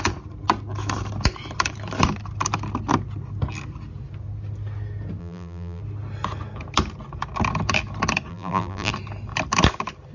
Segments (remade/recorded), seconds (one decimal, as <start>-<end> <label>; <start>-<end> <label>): 0.0-5.2 recorded; 5.2-5.8 remade; 5.8-8.3 recorded; 8.3-8.9 remade; 8.9-10.1 recorded